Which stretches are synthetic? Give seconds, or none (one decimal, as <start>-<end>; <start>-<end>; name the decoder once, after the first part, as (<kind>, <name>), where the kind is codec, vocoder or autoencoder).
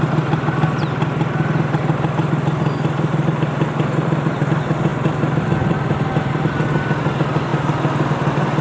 none